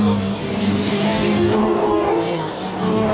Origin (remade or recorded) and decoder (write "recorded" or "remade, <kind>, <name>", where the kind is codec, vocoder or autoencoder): remade, codec, DAC